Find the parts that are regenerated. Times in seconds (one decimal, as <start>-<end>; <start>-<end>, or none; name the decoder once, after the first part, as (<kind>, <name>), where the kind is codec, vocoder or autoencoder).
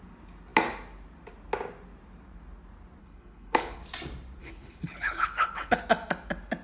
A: 3.0-3.8 (codec, HILCodec); 4.4-5.8